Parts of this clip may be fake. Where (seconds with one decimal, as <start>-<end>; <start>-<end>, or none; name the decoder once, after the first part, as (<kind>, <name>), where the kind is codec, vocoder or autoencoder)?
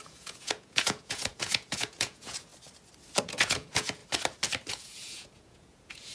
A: 0.0-2.5 (vocoder, Vocos); 3.2-4.0; 4.7-6.1